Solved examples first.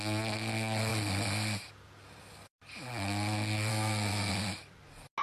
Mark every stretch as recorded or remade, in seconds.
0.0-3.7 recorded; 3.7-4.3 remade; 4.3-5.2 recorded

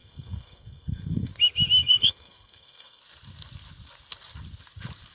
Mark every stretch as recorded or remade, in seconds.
0.0-1.3 remade; 1.3-1.8 recorded; 1.8-3.0 remade; 3.0-5.1 recorded

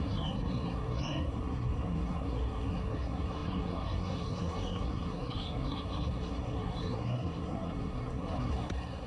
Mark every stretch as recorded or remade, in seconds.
0.0-9.1 remade